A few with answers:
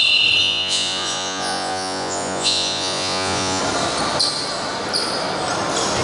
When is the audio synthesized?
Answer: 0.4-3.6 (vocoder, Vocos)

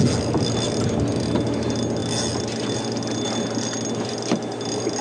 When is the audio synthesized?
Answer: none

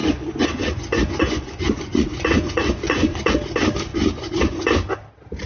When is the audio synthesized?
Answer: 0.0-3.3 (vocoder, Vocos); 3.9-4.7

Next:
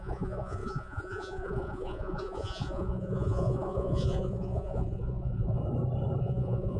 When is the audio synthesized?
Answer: 0.0-5.6 (vocoder, Vocos); 6.2-6.8

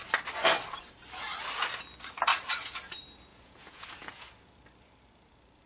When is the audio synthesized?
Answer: 2.3-2.9 (vocoder, Vocos); 3.3-4.3